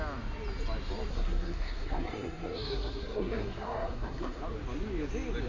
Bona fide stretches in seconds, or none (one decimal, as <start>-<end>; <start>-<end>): 0.0-1.1; 4.4-5.5